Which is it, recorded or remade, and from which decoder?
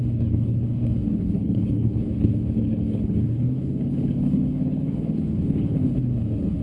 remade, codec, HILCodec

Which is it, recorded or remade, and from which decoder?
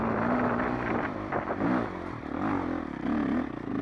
recorded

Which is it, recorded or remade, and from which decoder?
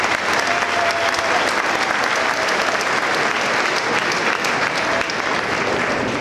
recorded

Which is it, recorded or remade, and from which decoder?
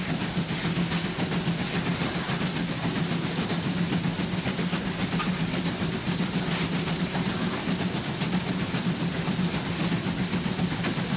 recorded